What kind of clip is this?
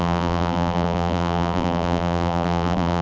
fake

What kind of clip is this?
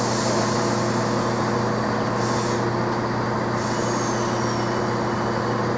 real